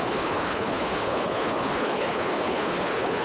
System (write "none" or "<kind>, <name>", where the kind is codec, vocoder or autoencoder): codec, HILCodec